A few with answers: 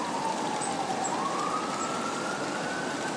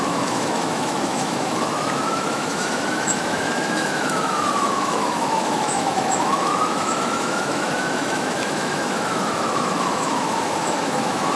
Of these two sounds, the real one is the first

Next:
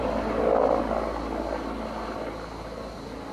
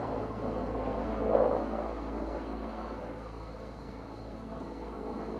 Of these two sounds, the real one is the first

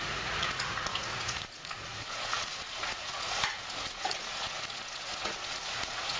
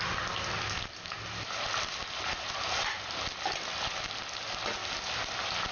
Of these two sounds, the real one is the second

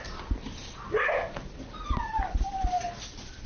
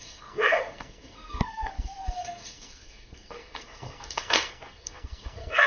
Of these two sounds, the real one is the first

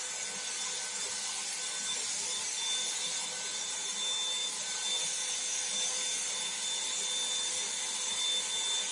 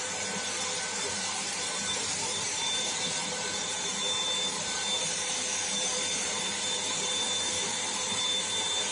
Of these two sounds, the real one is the first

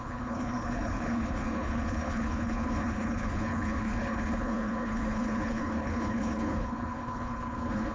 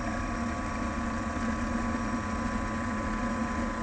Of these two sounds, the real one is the second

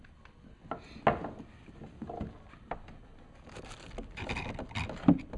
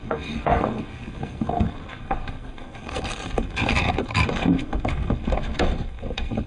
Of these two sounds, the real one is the first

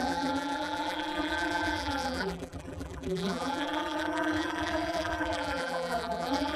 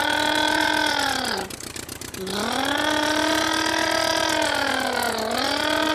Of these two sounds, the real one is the second